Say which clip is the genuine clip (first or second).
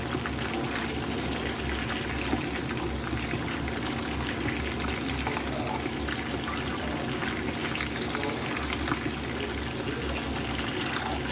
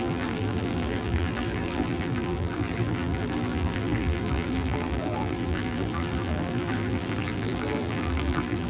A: first